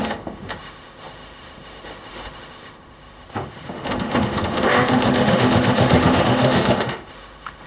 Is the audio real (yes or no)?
no